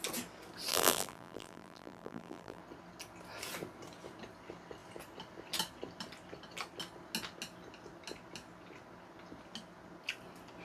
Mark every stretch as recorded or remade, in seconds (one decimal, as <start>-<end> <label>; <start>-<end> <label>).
0.0-0.7 recorded; 0.7-2.6 remade; 2.6-10.6 recorded